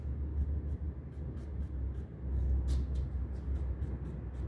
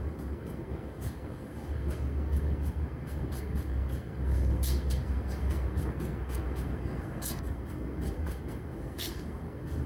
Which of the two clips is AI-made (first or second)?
second